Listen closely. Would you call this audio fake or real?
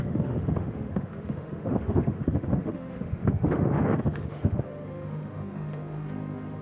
fake